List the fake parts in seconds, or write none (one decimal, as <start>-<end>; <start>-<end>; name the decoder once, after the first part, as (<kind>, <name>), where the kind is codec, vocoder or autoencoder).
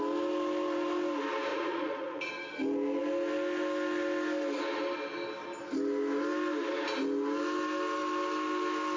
1.5-2.3 (vocoder, Vocos)